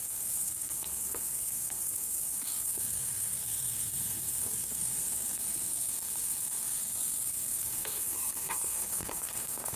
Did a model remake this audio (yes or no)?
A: yes